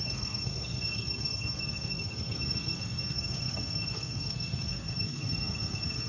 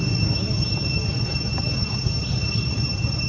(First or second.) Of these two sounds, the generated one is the first